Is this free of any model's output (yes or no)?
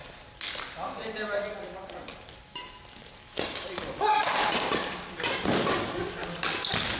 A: yes